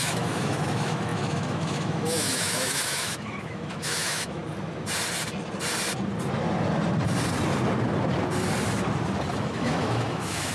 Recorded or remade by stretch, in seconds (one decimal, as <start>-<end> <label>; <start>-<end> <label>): 0.0-4.4 remade; 4.4-9.3 recorded; 9.3-10.5 remade